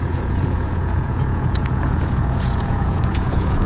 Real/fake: fake